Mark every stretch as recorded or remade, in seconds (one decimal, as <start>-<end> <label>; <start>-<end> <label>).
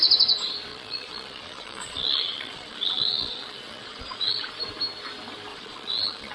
0.0-0.7 recorded; 0.7-4.5 remade; 4.5-5.5 recorded; 5.5-6.3 remade